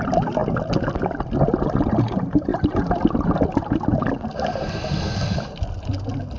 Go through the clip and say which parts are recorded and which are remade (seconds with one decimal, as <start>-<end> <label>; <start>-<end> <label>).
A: 0.0-6.4 recorded